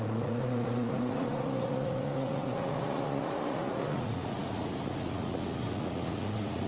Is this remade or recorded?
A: remade